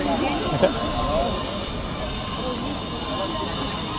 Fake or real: real